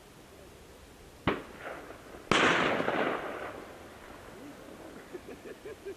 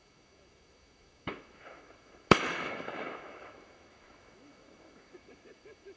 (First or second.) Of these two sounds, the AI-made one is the second